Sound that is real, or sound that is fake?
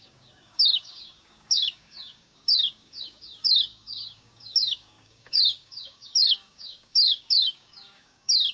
fake